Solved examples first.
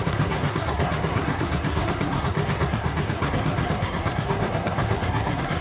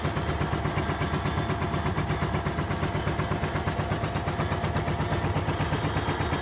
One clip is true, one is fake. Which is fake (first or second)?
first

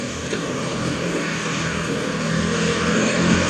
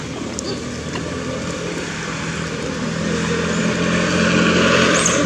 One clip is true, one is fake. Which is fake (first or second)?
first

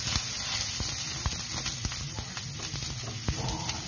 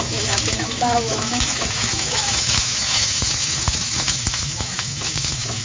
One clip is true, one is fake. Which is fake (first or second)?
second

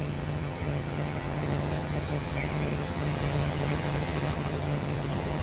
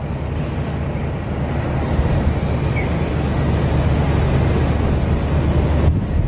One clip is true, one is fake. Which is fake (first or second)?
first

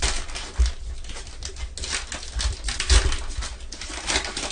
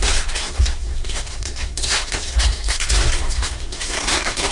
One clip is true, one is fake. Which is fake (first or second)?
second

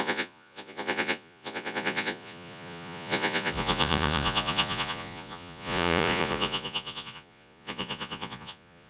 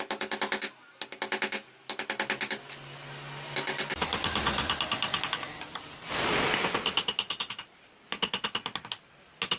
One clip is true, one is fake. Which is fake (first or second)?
first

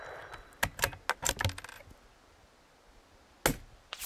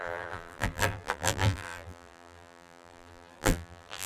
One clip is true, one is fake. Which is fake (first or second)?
second